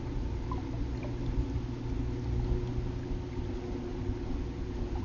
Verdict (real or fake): real